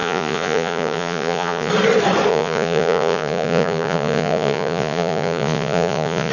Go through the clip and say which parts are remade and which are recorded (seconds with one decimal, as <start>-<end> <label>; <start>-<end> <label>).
0.0-1.7 remade; 1.7-2.3 recorded; 2.3-6.3 remade